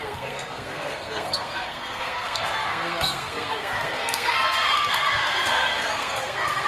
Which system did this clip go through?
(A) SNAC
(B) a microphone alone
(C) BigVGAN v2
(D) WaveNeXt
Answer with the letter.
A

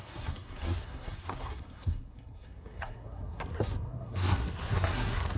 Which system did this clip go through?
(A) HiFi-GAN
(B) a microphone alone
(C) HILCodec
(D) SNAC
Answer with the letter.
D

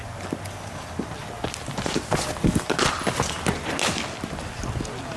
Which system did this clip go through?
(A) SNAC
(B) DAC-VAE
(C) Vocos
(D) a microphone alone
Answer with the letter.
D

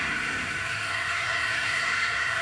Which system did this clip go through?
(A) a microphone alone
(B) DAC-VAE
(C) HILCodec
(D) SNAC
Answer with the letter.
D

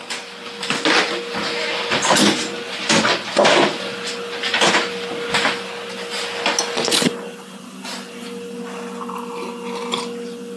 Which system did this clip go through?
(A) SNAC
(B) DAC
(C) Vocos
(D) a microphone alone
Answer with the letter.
D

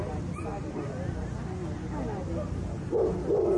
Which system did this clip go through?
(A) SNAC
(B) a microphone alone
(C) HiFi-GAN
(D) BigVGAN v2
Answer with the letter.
B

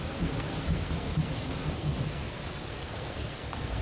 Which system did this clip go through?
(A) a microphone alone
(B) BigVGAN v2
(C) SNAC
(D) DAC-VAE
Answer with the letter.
C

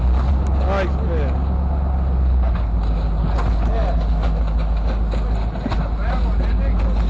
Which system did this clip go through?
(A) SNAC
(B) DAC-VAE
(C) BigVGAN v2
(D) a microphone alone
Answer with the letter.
D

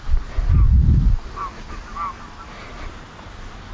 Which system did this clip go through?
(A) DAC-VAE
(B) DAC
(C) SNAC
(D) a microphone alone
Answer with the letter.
D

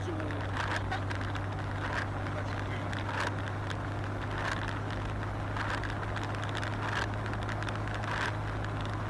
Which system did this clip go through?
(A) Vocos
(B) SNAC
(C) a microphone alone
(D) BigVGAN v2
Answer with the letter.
C